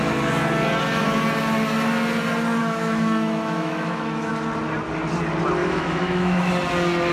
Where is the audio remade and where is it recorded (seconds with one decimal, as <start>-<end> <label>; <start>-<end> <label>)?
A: 0.0-2.6 recorded; 2.6-4.3 remade; 4.3-5.6 recorded; 5.6-6.5 remade; 6.5-7.1 recorded